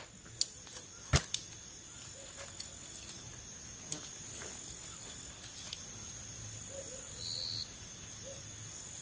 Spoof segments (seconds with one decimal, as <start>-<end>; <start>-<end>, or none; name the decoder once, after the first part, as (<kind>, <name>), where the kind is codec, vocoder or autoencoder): none